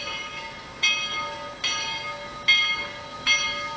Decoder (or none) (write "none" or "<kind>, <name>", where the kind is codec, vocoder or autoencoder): none